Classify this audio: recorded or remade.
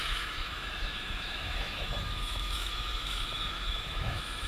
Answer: remade